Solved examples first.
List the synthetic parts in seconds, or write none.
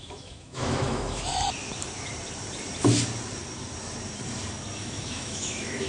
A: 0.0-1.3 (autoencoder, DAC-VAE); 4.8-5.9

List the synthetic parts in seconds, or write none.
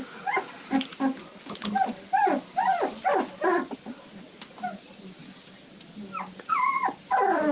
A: none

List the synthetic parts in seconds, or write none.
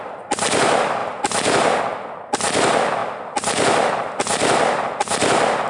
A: none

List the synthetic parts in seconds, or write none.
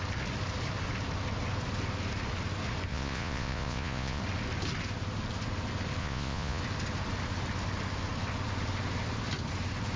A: 2.9-4.2 (vocoder, Vocos); 6.0-6.6